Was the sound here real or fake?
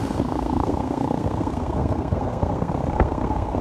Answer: fake